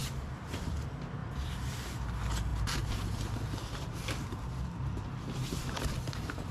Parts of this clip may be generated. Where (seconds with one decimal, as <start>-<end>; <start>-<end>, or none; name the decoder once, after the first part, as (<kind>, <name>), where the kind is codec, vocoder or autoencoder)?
0.0-0.7 (vocoder, BigVGAN v2); 1.2-1.7; 2.5-4.4